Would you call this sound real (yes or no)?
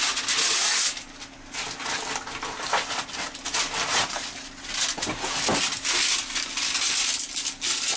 yes